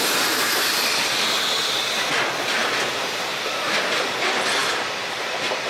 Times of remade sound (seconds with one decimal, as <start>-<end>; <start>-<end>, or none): 0.0-5.7